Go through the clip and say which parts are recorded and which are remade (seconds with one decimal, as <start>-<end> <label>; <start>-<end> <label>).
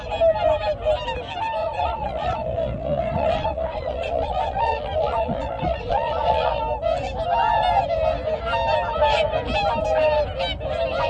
0.0-1.6 recorded; 1.6-6.6 remade; 6.6-11.1 recorded